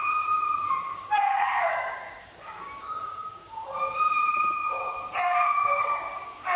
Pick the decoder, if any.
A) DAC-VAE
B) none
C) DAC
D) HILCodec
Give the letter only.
C